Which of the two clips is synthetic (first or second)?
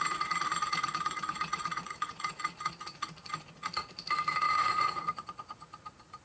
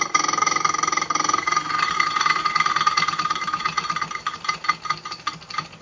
first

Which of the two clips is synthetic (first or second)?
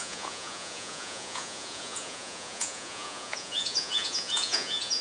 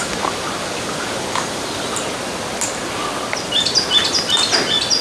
first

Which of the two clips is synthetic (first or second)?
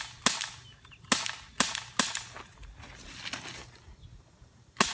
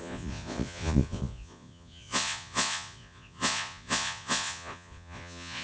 second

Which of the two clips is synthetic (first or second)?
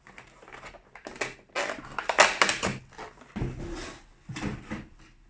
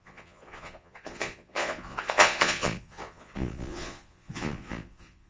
second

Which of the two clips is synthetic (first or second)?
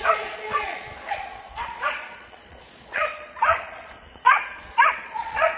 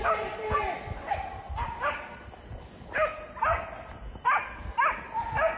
first